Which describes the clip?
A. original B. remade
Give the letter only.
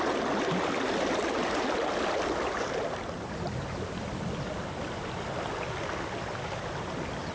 A